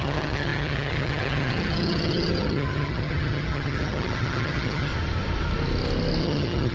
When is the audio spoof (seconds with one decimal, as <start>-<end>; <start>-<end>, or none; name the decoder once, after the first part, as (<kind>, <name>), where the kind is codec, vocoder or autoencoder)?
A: 0.0-4.9 (vocoder, HiFi-GAN); 6.2-6.7